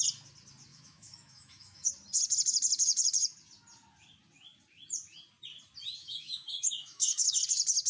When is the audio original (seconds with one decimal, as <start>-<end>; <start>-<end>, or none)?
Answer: 0.0-0.7; 1.9-6.0; 7.4-7.9